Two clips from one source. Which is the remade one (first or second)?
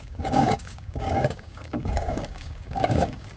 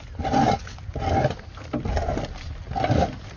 first